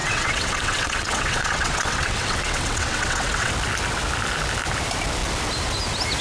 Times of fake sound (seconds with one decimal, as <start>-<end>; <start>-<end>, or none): 0.0-3.5